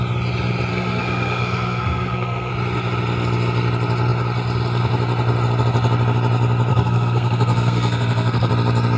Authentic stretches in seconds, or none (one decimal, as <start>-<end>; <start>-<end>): 0.0-0.7; 2.5-6.7; 8.5-9.0